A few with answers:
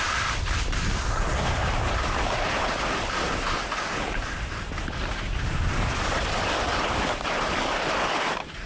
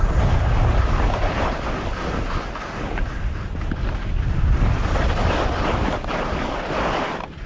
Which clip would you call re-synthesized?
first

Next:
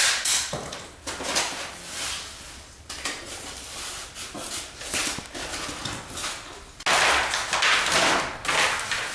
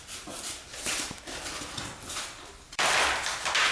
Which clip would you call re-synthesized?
second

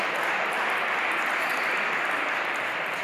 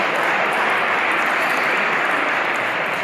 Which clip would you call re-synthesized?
second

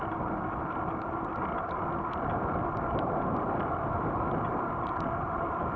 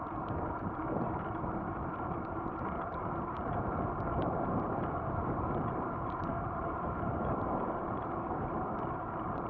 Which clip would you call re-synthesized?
second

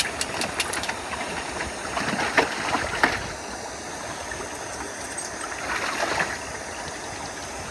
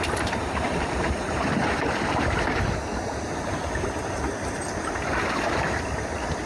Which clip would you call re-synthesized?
second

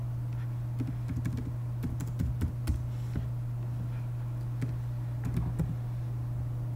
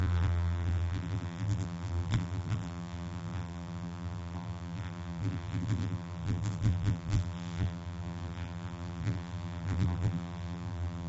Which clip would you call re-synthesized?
second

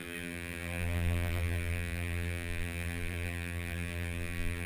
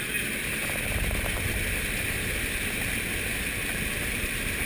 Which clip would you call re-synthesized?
first